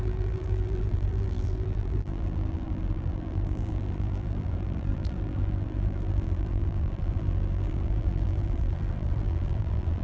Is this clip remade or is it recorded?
remade